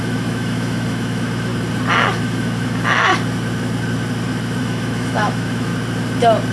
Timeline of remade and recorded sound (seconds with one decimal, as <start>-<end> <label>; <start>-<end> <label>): 0.0-1.5 remade; 1.5-2.2 recorded; 2.2-3.1 remade; 3.1-4.6 recorded; 4.6-5.7 remade; 5.7-6.5 recorded